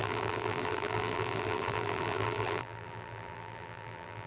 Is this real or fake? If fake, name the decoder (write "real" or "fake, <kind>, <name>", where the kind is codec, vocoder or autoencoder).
fake, vocoder, BigVGAN v2